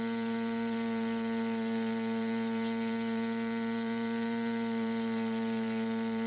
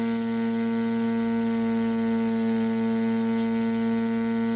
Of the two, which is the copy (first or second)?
first